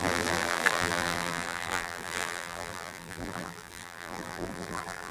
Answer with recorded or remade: remade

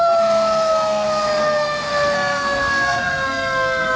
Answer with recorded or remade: remade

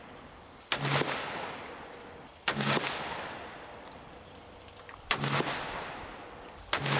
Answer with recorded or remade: recorded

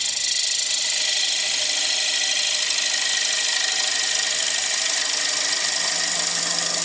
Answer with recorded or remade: recorded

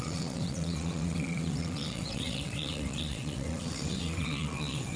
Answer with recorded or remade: remade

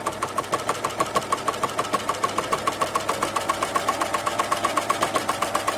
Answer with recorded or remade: recorded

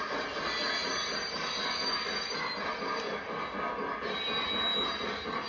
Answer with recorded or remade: recorded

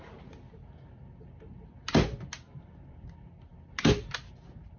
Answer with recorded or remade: recorded